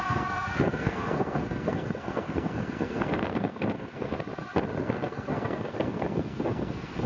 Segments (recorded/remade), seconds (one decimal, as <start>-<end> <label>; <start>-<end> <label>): 0.0-4.1 remade; 4.1-4.8 recorded; 4.8-7.1 remade